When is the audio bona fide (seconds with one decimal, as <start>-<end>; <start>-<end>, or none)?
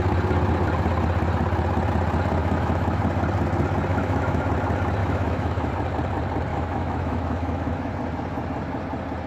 0.0-2.4; 3.0-3.9; 4.5-5.0; 5.7-6.5; 7.9-9.3